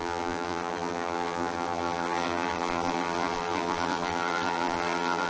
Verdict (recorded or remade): remade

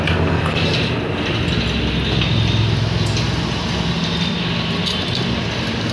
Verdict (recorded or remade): recorded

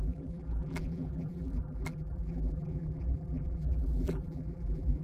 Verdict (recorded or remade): remade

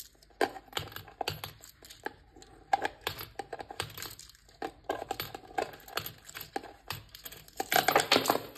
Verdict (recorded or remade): recorded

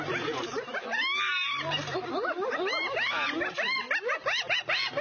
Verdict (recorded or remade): recorded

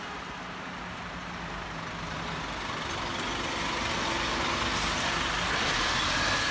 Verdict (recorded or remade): recorded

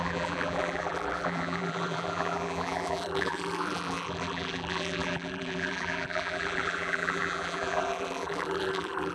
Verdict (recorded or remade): remade